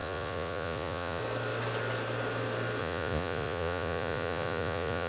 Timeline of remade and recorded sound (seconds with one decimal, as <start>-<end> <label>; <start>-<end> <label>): 0.0-1.2 remade; 1.2-2.8 recorded; 2.8-5.1 remade